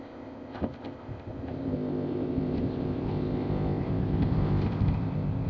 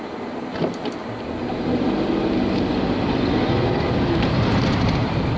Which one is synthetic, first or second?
first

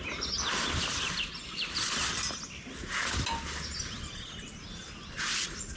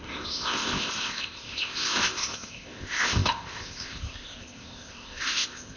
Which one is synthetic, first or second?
second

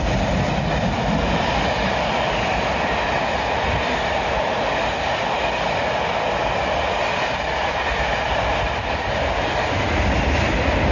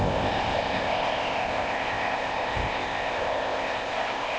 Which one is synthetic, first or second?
second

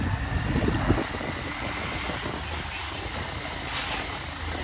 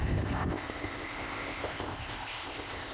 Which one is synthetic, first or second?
second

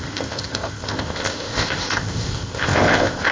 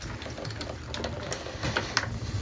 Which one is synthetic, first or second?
first